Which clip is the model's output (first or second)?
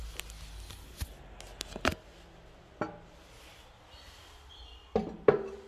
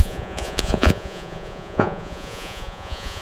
second